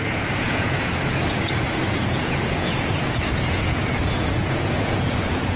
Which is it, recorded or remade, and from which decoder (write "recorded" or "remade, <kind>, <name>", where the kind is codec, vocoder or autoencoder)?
remade, vocoder, Vocos